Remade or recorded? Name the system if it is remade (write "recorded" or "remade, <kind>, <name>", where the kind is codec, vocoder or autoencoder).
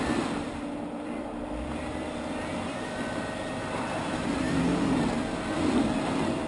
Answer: remade, vocoder, BigVGAN v2